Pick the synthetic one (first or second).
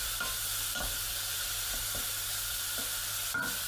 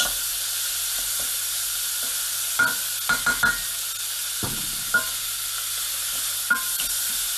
first